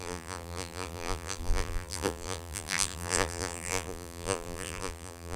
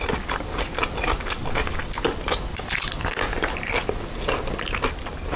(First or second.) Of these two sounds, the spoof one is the first